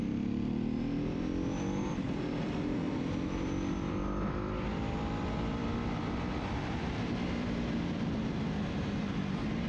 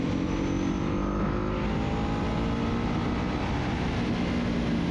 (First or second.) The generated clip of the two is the first